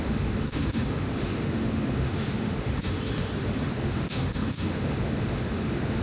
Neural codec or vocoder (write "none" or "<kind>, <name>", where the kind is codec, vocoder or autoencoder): autoencoder, DAC-VAE